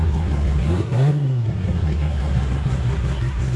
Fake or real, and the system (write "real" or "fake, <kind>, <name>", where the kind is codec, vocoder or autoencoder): fake, codec, SNAC